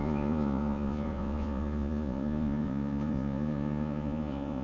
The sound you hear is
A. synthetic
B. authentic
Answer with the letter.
A